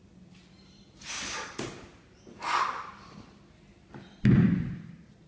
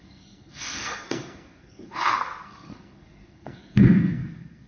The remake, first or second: second